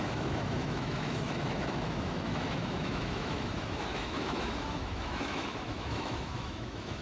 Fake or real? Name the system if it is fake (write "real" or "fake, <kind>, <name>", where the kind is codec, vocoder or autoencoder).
fake, autoencoder, DAC-VAE